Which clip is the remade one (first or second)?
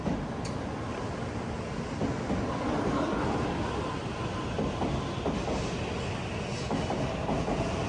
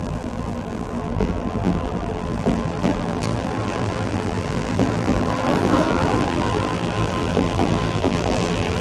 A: second